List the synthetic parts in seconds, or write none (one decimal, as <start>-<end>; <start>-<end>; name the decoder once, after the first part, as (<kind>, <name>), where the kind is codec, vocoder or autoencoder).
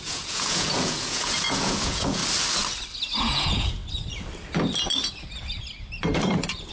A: 0.0-2.2 (vocoder, Vocos); 3.2-3.8